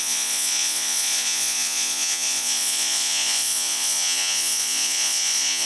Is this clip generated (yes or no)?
yes